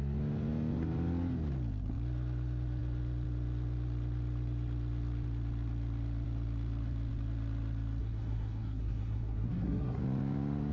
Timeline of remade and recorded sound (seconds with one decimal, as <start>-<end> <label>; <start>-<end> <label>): 0.0-8.0 recorded; 8.0-10.0 remade; 10.0-10.7 recorded